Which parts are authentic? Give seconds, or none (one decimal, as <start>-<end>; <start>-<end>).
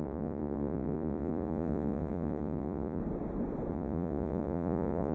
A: 3.0-3.7